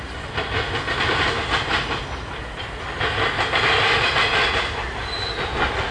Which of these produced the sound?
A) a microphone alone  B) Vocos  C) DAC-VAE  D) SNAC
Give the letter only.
A